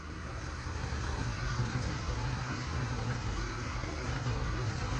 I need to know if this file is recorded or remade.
remade